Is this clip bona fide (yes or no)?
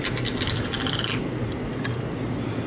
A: yes